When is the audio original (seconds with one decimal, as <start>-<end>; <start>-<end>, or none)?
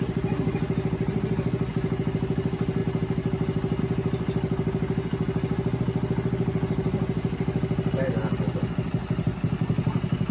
0.0-10.3